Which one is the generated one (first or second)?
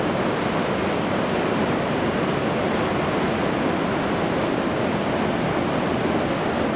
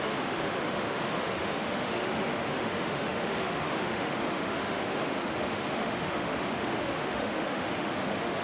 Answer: second